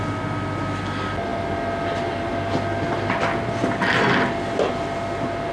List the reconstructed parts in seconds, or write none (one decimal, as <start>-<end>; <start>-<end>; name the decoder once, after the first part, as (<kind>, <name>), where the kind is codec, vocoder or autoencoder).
none